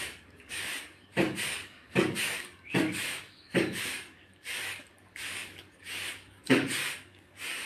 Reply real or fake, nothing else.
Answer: fake